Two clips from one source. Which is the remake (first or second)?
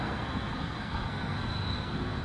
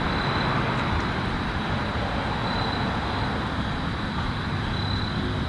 first